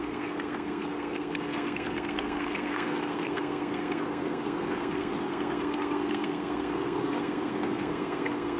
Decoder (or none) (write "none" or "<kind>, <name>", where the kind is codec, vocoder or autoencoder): codec, SNAC